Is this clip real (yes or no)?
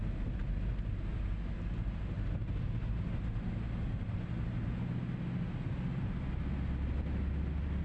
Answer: yes